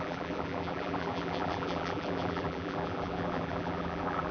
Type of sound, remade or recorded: remade